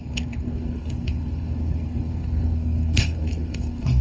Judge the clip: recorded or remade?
remade